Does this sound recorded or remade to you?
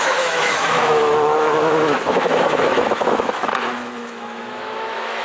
remade